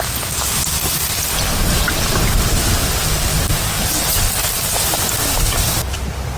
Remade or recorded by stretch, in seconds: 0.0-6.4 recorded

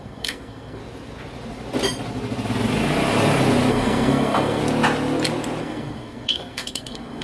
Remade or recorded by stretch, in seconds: 0.0-0.8 remade; 0.8-3.7 recorded; 3.7-4.6 remade; 4.6-5.6 recorded; 5.6-7.2 remade

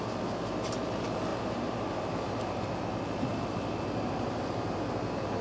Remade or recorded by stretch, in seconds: 0.0-1.3 recorded; 1.3-2.6 remade; 2.6-3.3 recorded; 3.3-5.4 remade

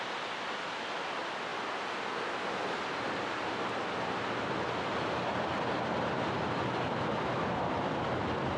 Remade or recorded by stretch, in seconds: 0.0-8.6 recorded

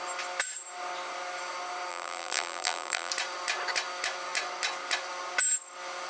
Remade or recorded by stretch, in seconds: 0.0-1.9 recorded; 1.9-3.1 remade; 3.1-6.1 recorded